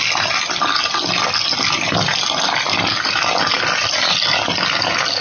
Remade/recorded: recorded